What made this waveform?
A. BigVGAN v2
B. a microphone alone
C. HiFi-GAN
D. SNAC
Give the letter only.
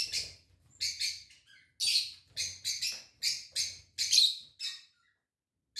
B